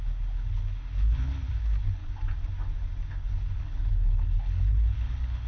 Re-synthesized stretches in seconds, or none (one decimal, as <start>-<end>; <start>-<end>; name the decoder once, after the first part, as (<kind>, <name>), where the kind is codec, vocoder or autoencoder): 0.0-2.0 (codec, HILCodec); 3.1-5.5